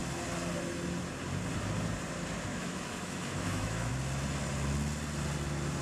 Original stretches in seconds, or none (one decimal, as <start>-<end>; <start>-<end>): 0.0-2.5; 3.9-5.8